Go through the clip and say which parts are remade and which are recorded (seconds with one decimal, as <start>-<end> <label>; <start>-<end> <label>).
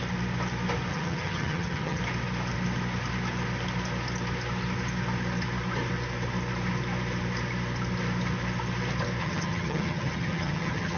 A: 0.0-0.9 recorded; 0.9-2.0 remade; 2.0-9.2 recorded; 9.2-11.0 remade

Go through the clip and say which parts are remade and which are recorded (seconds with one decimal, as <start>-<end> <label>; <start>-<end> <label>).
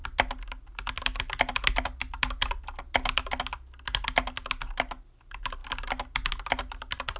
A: 0.0-7.2 recorded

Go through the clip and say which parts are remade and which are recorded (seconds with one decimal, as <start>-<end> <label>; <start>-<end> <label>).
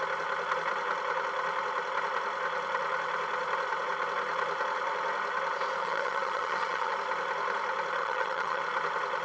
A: 0.0-5.8 recorded; 5.8-6.9 remade; 6.9-8.0 recorded; 8.0-8.6 remade; 8.6-9.2 recorded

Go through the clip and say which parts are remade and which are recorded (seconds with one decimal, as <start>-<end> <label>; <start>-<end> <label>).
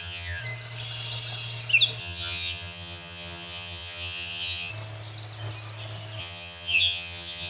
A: 0.0-0.4 remade; 0.4-2.0 recorded; 2.0-4.7 remade; 4.7-6.2 recorded; 6.2-7.5 remade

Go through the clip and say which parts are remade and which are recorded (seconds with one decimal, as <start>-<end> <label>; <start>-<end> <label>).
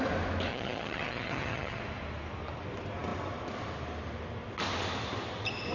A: 0.0-0.5 recorded; 0.5-1.8 remade; 1.8-5.7 recorded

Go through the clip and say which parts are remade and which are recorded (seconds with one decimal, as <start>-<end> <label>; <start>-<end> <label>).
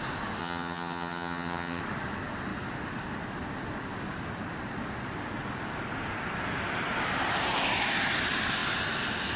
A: 0.0-0.4 recorded; 0.4-1.8 remade; 1.8-9.4 recorded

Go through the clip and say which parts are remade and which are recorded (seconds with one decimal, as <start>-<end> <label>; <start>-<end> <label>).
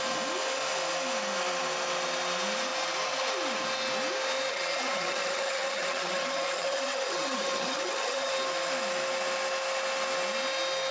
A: 0.0-4.5 recorded; 4.5-8.3 remade; 8.3-10.9 recorded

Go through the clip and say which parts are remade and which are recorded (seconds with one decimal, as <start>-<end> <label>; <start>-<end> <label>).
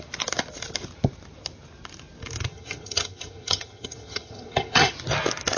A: 0.0-2.5 recorded; 2.5-4.9 remade; 4.9-5.6 recorded